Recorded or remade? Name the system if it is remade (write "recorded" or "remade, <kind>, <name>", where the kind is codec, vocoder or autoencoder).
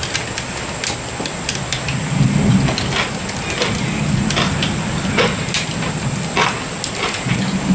recorded